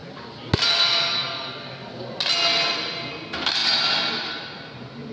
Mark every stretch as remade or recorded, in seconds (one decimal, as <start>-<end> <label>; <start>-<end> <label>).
0.0-5.1 recorded